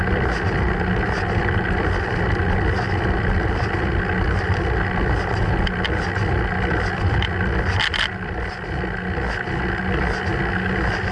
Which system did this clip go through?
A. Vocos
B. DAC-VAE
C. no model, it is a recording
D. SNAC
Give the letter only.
C